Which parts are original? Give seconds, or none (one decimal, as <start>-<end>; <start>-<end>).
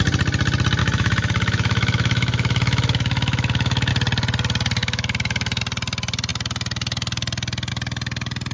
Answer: 0.0-0.8; 3.9-4.8; 5.6-8.5